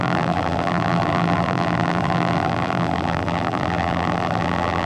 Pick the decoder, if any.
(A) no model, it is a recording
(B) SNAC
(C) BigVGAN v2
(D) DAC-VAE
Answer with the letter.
C